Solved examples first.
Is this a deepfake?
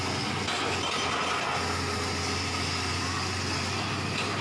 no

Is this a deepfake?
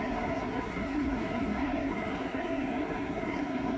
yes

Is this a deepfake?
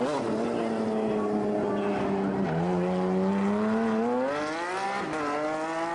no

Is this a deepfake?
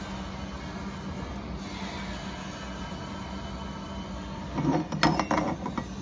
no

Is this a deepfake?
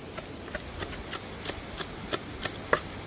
no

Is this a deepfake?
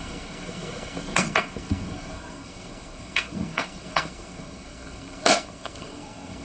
yes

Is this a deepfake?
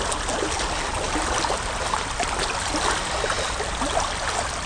no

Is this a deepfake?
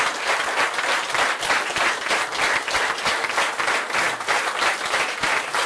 no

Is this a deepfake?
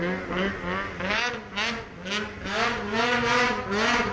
no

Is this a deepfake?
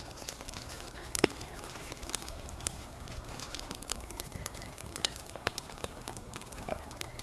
yes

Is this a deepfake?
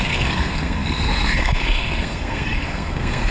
yes